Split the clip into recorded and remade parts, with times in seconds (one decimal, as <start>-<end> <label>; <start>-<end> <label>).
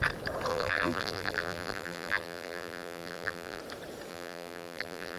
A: 0.0-0.5 recorded; 0.5-3.6 remade; 3.6-4.1 recorded; 4.1-5.2 remade